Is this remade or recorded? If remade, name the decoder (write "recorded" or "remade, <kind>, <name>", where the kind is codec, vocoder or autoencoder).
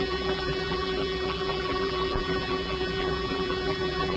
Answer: remade, vocoder, BigVGAN v2